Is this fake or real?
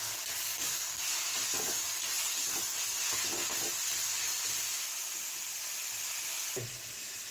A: real